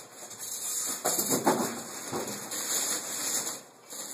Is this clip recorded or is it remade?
recorded